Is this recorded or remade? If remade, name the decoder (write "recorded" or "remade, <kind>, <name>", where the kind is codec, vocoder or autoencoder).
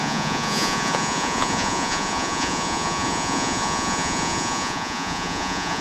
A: remade, vocoder, Vocos